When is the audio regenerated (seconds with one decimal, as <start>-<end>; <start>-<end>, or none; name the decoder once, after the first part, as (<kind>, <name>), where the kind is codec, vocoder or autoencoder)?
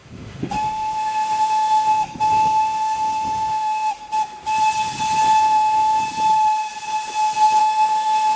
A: 0.0-4.1 (autoencoder, DAC-VAE); 5.4-6.0; 7.6-8.4